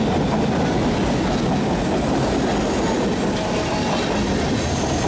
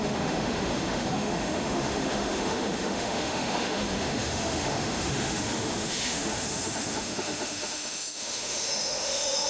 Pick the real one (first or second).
first